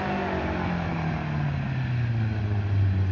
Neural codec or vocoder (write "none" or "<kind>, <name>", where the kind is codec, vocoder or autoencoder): none